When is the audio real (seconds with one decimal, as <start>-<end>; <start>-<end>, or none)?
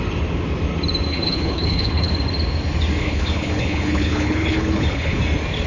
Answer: 0.0-1.1; 2.1-3.0; 5.2-5.7